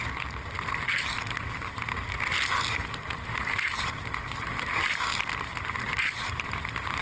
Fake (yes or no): no